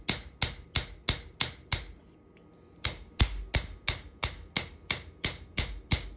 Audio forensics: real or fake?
real